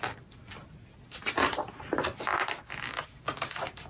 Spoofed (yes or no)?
no